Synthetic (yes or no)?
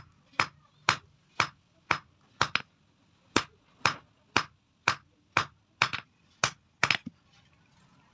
no